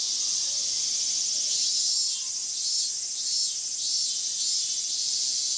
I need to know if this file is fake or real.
real